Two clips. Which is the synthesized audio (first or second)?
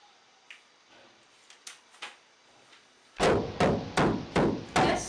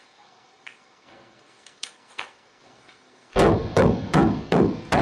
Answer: second